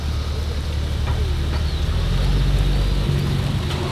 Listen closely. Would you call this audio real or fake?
real